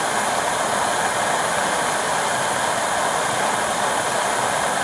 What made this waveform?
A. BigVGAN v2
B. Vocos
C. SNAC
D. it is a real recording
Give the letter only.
D